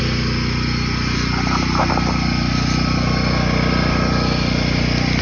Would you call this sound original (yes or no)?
yes